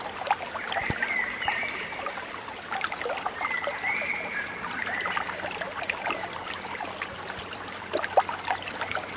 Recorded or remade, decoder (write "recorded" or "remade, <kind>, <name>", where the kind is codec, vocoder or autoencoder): recorded